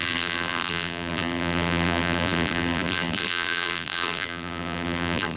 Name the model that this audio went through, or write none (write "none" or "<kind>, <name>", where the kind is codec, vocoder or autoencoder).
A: vocoder, BigVGAN v2